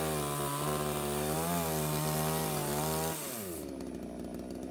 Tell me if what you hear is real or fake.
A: real